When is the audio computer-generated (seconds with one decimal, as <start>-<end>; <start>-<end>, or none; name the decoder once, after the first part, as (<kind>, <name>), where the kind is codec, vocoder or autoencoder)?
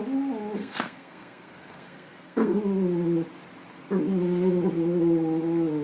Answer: 0.6-2.6 (codec, SNAC)